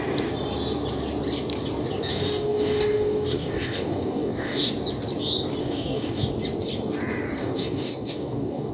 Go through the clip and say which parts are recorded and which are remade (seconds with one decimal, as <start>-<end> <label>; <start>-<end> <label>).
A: 0.0-2.1 recorded; 2.1-4.7 remade; 4.7-5.6 recorded; 5.6-6.3 remade; 6.3-7.4 recorded; 7.4-8.7 remade